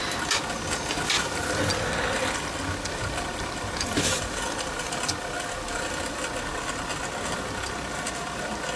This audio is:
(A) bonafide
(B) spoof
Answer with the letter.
A